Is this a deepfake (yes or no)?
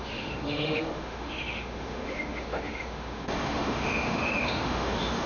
yes